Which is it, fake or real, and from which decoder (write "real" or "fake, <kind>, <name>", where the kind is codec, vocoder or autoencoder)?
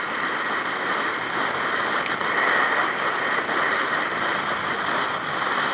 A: real